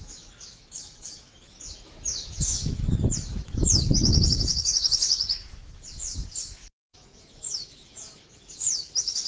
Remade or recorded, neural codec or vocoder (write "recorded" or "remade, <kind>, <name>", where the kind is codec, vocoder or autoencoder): remade, autoencoder, DAC-VAE